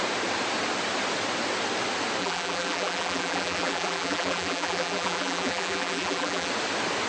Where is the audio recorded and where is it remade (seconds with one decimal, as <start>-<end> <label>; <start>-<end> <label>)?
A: 0.0-2.2 recorded; 2.2-6.5 remade; 6.5-7.1 recorded